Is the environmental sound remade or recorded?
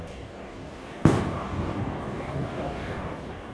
remade